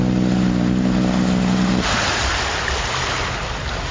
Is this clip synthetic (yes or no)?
no